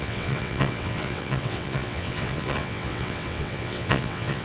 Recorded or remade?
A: remade